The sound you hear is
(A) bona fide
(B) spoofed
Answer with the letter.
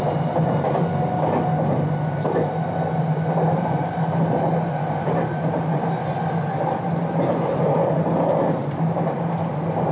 A